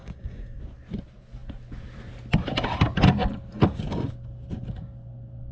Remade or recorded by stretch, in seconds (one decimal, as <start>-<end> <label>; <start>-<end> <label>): 0.0-0.6 remade; 0.6-5.5 recorded

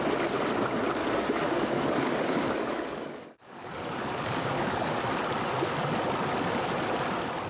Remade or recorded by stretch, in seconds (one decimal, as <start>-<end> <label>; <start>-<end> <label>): 0.0-1.0 recorded; 1.0-5.0 remade; 5.0-7.5 recorded

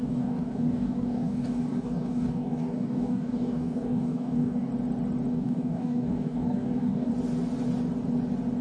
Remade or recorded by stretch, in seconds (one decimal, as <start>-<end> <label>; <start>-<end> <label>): 0.0-4.7 remade; 4.7-5.3 recorded; 5.3-7.1 remade; 7.1-8.6 recorded

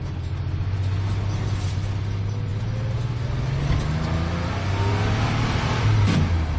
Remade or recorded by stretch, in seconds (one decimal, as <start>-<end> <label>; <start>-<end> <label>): 0.0-6.6 recorded